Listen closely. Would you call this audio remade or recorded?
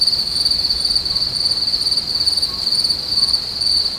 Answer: recorded